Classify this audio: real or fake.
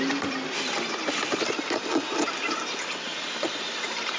fake